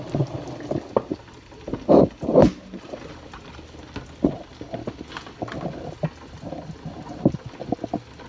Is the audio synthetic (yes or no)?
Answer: no